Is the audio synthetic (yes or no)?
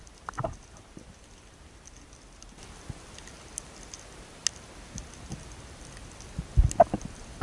no